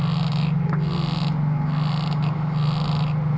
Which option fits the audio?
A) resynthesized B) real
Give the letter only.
B